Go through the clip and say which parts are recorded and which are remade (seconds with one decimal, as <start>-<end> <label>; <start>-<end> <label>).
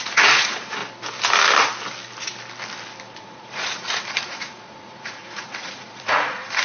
0.0-0.8 remade; 0.8-3.2 recorded; 3.2-6.6 remade